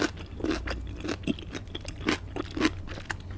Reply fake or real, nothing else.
real